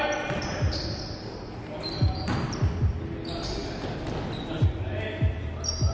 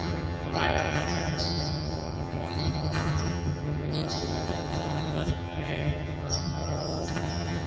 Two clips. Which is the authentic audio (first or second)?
first